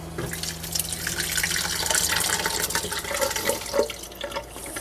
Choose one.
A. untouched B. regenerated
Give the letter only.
A